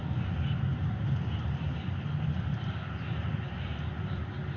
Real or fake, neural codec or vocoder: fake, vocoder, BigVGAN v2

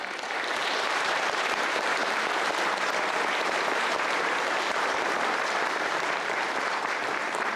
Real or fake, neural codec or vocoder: fake, vocoder, BigVGAN v2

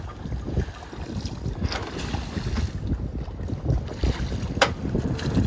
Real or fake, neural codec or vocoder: real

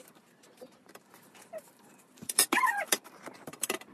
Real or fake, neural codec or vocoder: fake, vocoder, BigVGAN v2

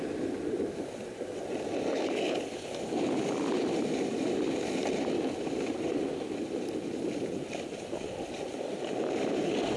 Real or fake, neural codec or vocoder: fake, vocoder, BigVGAN v2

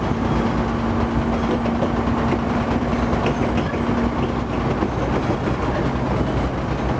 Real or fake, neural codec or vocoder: real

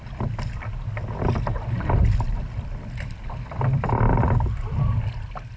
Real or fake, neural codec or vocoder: fake, vocoder, BigVGAN v2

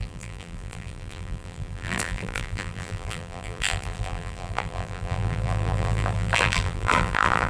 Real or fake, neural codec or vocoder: fake, vocoder, BigVGAN v2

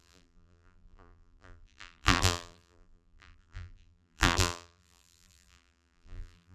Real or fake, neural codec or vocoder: fake, vocoder, BigVGAN v2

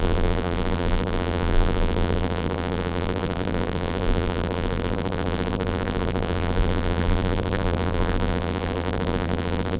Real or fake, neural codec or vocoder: fake, vocoder, BigVGAN v2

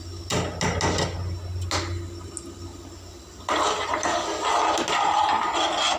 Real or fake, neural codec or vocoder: real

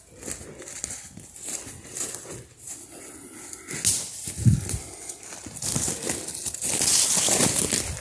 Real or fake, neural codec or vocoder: real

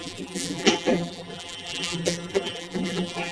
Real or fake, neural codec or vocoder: fake, vocoder, BigVGAN v2